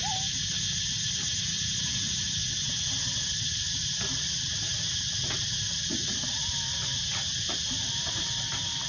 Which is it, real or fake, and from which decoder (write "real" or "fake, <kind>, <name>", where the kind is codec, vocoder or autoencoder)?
real